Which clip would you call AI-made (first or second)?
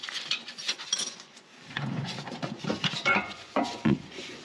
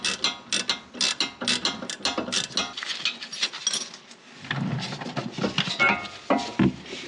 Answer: first